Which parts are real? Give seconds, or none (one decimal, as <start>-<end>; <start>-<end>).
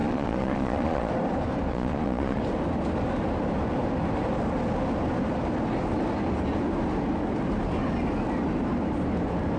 1.1-1.7; 2.4-9.6